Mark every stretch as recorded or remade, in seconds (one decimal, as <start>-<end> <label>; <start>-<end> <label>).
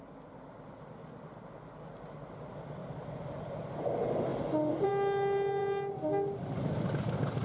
0.0-2.8 recorded; 2.8-3.8 remade; 3.8-4.3 recorded; 4.3-4.9 remade; 4.9-7.4 recorded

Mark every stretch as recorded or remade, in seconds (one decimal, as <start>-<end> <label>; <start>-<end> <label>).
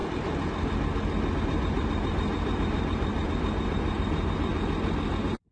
0.0-1.4 recorded; 1.4-4.5 remade; 4.5-5.1 recorded; 5.1-5.5 remade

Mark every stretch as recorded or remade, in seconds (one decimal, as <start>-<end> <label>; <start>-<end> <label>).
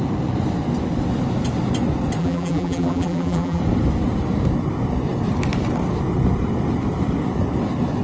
0.0-2.2 recorded; 2.2-3.6 remade; 3.6-8.0 recorded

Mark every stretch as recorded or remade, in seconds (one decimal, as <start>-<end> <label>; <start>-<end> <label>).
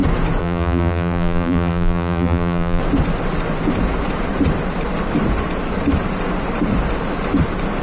0.0-0.4 recorded; 0.4-2.8 remade; 2.8-7.8 recorded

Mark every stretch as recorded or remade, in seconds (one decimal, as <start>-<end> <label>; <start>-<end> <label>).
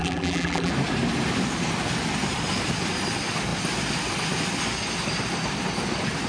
0.0-0.7 remade; 0.7-6.3 recorded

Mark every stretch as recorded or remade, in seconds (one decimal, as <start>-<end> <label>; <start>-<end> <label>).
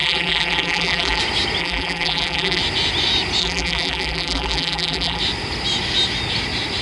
0.0-1.2 remade; 1.2-1.6 recorded; 1.6-2.6 remade; 2.6-3.4 recorded; 3.4-5.2 remade; 5.2-6.8 recorded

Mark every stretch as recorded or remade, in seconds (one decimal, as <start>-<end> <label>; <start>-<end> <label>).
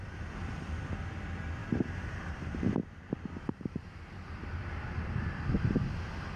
0.0-1.6 recorded; 1.6-4.6 remade; 4.6-6.4 recorded